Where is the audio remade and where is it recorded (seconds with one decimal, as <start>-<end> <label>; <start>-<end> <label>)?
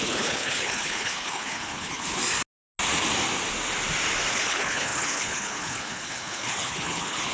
0.0-2.2 remade; 2.2-4.3 recorded; 4.3-7.3 remade